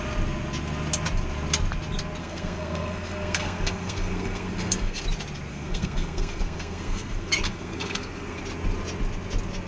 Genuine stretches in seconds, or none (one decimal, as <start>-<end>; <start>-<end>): 0.0-2.2; 5.0-5.5; 8.4-9.7